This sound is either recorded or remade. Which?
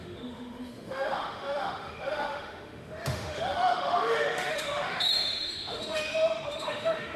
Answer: remade